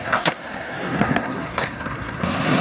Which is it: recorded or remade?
remade